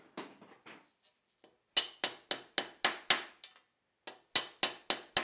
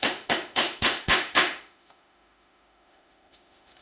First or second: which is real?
first